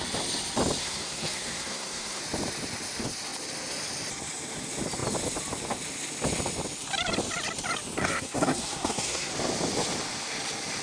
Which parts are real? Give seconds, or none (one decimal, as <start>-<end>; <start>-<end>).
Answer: 0.0-0.8; 2.2-8.0; 9.3-10.8